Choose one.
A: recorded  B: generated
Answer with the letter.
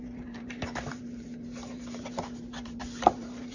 B